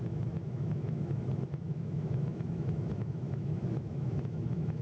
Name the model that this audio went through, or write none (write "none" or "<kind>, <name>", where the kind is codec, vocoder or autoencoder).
autoencoder, DAC-VAE